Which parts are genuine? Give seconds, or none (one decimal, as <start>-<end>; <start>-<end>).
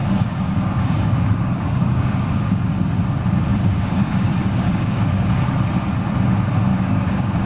2.7-3.5; 5.5-6.7